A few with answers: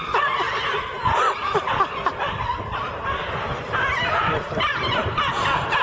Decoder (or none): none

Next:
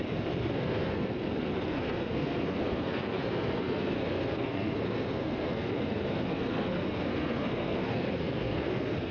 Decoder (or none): codec, SNAC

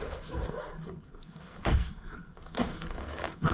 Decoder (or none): codec, SNAC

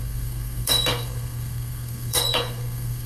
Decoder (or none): codec, SNAC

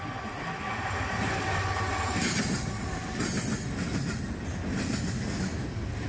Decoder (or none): none